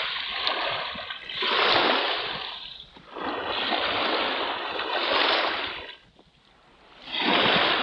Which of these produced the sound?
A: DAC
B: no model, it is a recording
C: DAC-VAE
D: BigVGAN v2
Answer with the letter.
D